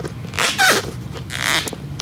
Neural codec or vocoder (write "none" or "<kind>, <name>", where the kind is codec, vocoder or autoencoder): none